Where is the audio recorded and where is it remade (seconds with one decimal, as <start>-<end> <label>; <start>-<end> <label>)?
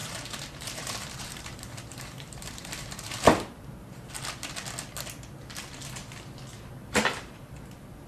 0.0-4.1 remade; 4.1-6.5 recorded; 6.5-7.5 remade; 7.5-8.1 recorded